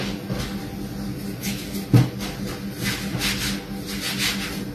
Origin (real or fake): real